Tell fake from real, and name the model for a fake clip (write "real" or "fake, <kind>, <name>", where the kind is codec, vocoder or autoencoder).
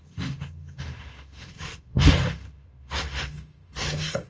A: fake, autoencoder, DAC-VAE